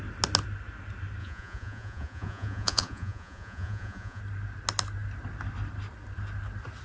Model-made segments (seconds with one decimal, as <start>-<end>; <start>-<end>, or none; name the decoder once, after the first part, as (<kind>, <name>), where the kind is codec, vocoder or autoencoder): 1.2-4.2 (vocoder, Vocos)